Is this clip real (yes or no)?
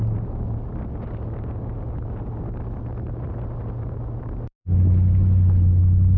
yes